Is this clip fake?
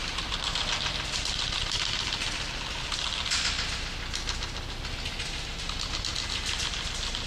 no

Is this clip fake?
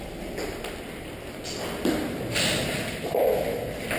no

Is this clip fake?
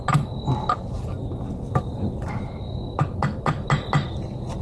no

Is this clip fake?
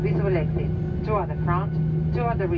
no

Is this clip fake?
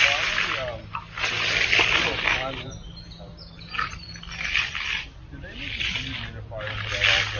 no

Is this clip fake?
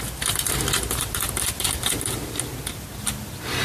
no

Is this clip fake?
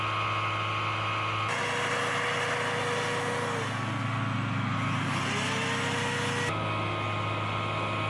no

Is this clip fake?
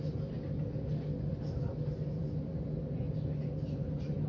no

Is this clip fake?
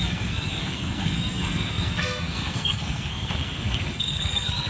yes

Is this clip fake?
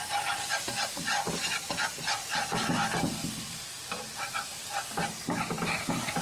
no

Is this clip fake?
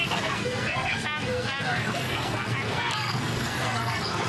yes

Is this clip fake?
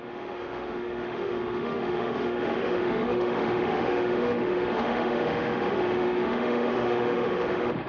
yes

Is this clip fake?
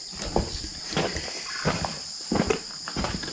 no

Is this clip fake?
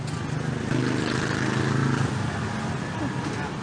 no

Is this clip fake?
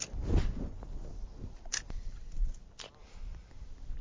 no